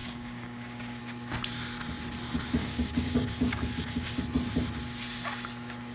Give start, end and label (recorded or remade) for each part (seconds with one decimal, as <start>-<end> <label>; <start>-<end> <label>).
0.0-1.0 remade; 1.0-2.6 recorded; 2.6-4.2 remade; 4.2-5.9 recorded